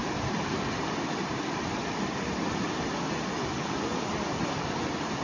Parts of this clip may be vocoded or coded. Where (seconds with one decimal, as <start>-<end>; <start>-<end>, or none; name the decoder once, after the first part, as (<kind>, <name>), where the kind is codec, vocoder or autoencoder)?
0.0-3.1 (vocoder, BigVGAN v2); 3.9-4.6